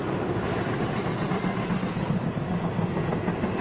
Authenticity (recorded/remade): recorded